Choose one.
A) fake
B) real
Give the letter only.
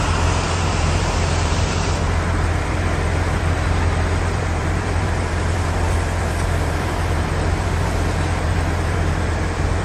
A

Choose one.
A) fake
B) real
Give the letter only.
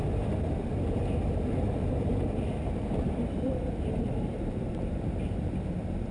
A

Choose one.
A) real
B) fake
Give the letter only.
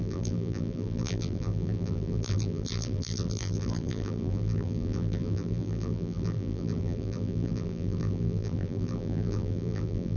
B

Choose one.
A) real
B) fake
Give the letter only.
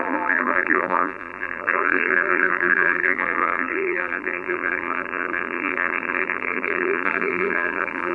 B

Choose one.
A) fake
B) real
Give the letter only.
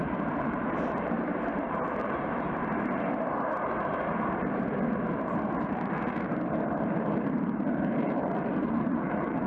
A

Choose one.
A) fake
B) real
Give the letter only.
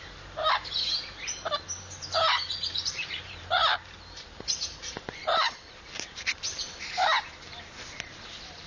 A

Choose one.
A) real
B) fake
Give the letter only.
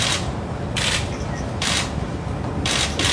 A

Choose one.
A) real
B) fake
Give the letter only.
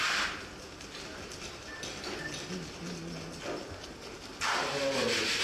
A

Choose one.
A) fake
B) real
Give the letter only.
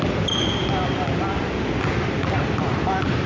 B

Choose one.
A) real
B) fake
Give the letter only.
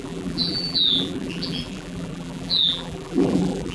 B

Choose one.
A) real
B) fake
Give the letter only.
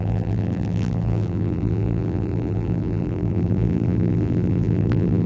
B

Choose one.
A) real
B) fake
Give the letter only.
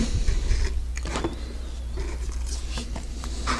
A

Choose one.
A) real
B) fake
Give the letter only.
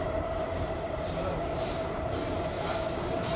B